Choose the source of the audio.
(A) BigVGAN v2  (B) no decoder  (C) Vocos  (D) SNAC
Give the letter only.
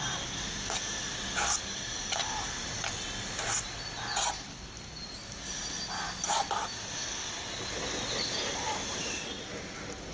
B